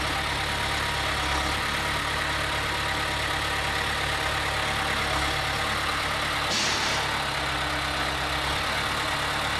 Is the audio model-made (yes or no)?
no